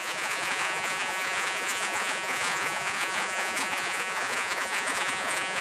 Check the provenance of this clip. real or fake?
fake